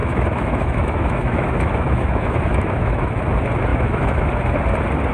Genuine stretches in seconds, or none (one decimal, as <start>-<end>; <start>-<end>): 3.1-3.7; 4.3-5.1